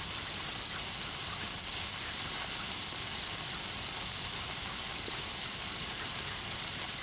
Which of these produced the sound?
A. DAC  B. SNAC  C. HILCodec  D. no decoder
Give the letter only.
D